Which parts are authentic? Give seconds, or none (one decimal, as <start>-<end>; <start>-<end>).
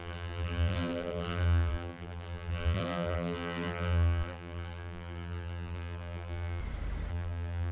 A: 6.6-7.1